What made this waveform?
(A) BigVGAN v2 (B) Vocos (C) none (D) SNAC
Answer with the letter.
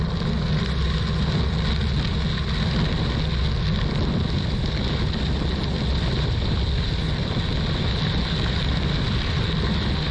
C